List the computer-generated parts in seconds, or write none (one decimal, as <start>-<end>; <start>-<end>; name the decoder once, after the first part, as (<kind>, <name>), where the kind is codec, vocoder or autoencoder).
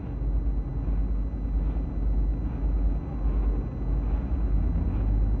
none